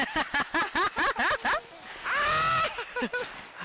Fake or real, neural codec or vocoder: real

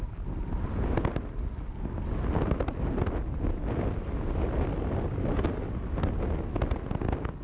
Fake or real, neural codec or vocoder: real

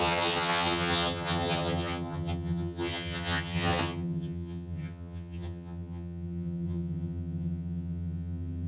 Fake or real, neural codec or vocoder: fake, vocoder, HiFi-GAN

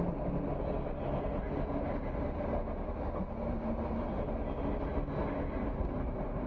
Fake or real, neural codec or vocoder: real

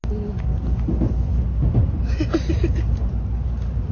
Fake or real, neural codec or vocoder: real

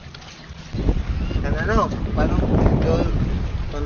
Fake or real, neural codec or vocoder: real